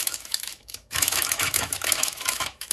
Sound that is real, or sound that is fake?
fake